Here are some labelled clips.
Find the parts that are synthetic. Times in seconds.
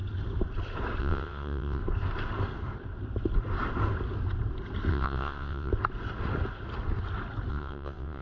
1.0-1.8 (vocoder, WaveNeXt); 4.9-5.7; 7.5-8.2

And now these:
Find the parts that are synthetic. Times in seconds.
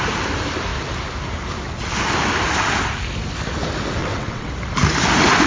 4.0-4.5 (vocoder, WaveNeXt)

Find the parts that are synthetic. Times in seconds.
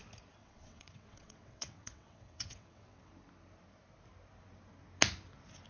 0.4-3.1 (vocoder, WaveNeXt)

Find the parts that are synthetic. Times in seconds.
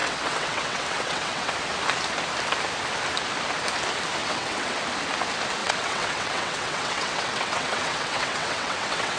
0.0-1.5 (vocoder, WaveNeXt); 4.2-4.8; 5.6-9.2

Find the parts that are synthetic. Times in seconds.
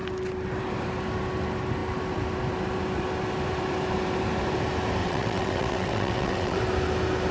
5.0-6.6 (vocoder, WaveNeXt)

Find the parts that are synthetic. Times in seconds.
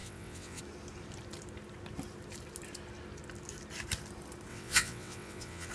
0.0-0.6 (vocoder, WaveNeXt); 4.5-5.7